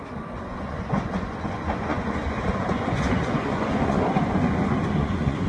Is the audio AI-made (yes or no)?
yes